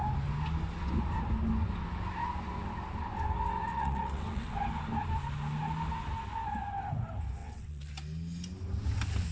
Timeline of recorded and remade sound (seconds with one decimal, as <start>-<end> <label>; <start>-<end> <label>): 0.0-3.7 recorded; 3.7-4.5 remade; 4.5-7.4 recorded; 7.4-7.9 remade; 7.9-9.3 recorded